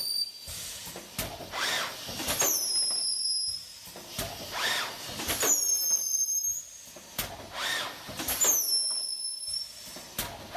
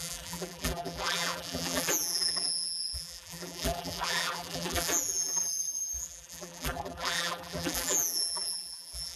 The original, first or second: first